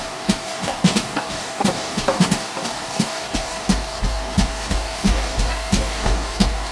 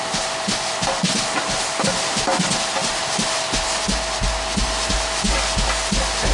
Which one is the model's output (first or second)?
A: first